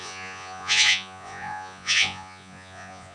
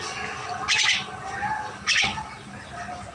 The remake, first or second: first